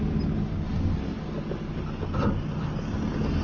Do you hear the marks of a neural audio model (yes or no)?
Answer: no